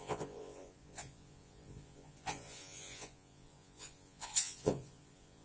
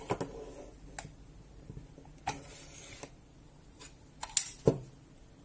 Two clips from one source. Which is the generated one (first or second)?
first